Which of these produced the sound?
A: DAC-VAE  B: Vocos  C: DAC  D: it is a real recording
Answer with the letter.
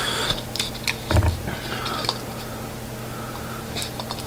D